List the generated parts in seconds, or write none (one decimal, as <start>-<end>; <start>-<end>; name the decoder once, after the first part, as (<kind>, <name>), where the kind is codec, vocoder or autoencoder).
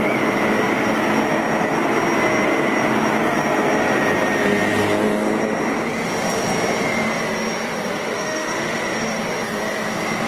7.9-9.2 (autoencoder, DAC-VAE)